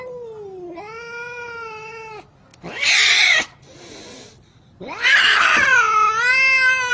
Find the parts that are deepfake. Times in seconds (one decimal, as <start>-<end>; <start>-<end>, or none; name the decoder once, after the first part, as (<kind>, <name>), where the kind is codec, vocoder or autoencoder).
none